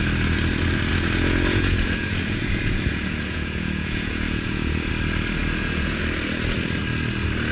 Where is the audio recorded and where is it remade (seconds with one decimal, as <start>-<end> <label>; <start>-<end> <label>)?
0.0-0.9 recorded; 0.9-4.9 remade; 4.9-5.4 recorded; 5.4-6.0 remade; 6.0-7.5 recorded